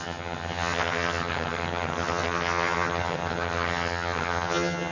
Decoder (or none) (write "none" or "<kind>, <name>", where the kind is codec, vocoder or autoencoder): vocoder, HiFi-GAN